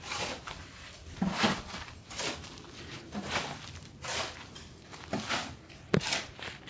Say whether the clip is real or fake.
fake